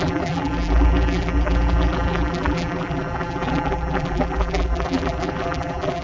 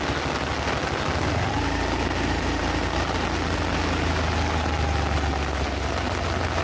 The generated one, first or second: first